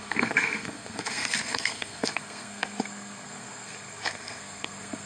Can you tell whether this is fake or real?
fake